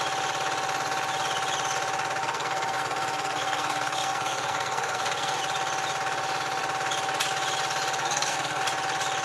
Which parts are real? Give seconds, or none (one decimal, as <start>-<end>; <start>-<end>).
0.0-2.2; 5.4-8.0; 8.6-9.2